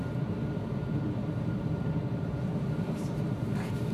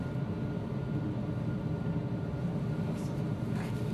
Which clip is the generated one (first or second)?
first